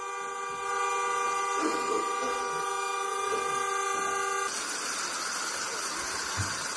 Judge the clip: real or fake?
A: real